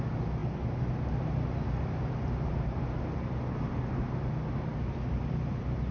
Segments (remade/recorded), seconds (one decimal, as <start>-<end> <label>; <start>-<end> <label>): 0.0-5.9 recorded